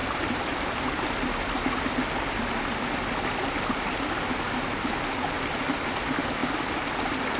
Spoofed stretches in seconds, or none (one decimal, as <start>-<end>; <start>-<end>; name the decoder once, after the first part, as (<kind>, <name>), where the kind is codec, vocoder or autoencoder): none